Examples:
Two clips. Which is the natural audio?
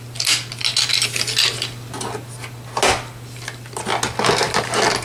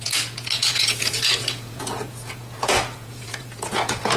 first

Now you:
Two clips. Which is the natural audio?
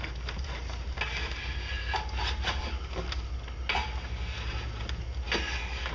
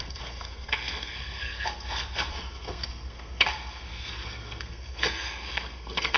first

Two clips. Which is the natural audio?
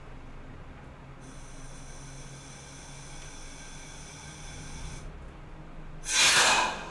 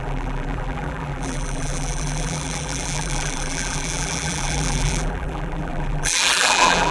first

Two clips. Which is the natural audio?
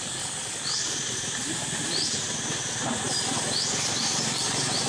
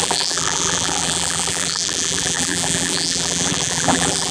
first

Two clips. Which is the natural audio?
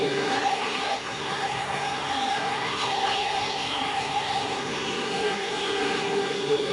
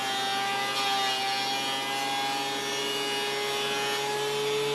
second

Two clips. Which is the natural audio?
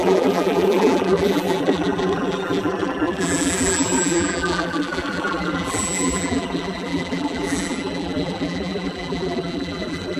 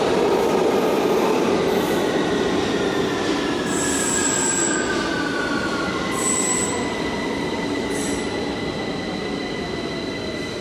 second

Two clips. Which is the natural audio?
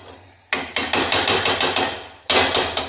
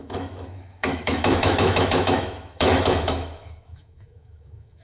first